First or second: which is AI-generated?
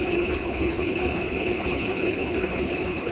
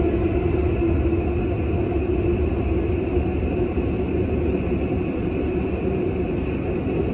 first